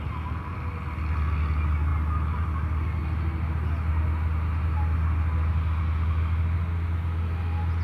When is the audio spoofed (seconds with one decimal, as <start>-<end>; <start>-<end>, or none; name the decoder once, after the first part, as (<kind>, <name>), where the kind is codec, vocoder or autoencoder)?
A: none